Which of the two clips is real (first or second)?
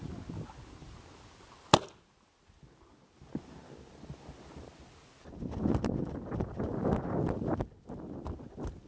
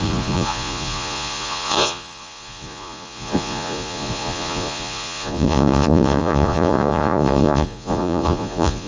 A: first